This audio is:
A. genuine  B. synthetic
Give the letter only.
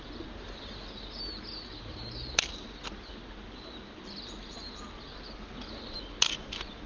A